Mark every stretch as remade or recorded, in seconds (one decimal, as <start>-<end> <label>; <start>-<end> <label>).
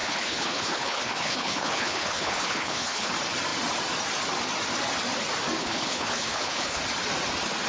0.0-3.1 remade; 3.1-5.6 recorded; 5.6-6.8 remade; 6.8-7.7 recorded